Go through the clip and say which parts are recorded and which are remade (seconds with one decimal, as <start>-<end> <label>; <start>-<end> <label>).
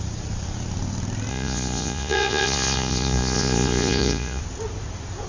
0.0-1.3 recorded; 1.3-4.4 remade; 4.4-5.3 recorded